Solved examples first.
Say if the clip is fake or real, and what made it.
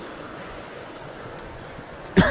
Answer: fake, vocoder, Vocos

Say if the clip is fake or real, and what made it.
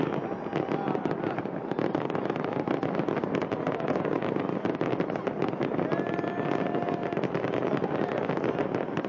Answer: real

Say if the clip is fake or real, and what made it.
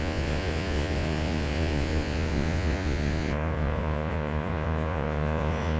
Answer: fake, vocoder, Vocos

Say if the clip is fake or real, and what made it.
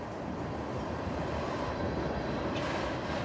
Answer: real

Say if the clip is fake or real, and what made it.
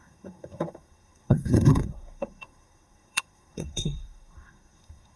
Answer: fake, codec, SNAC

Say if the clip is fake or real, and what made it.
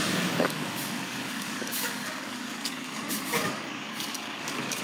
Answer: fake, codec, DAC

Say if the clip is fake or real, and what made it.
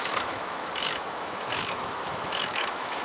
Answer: fake, autoencoder, DAC-VAE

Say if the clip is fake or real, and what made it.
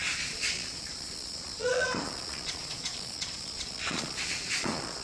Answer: fake, vocoder, Vocos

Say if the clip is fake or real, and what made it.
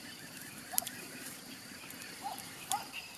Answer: fake, vocoder, BigVGAN v2